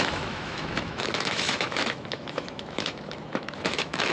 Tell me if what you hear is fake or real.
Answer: fake